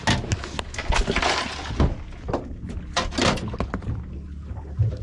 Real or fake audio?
real